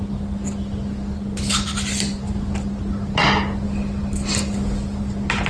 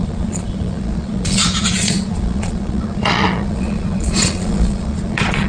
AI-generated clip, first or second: second